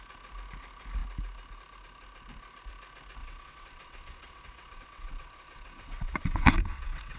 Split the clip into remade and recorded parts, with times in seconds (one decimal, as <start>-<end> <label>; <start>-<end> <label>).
0.0-3.2 recorded; 3.2-7.2 remade